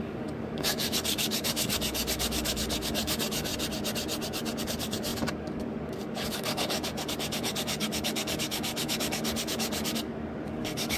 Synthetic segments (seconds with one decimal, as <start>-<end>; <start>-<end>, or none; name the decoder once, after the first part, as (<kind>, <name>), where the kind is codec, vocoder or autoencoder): 0.0-3.5 (codec, DAC); 4.6-11.0